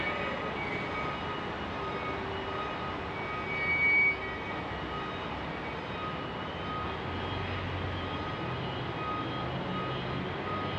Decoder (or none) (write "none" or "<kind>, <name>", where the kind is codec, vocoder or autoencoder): none